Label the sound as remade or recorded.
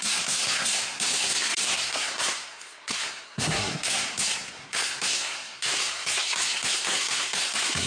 remade